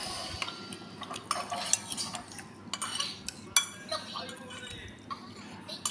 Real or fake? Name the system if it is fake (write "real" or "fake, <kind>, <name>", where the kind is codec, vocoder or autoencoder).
real